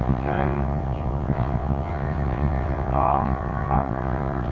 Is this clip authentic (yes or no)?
no